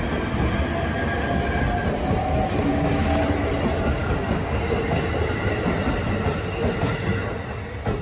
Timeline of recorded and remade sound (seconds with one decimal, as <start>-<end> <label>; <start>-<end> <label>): 0.0-2.7 recorded; 2.7-3.2 remade; 3.2-4.0 recorded; 4.0-4.6 remade; 4.6-8.0 recorded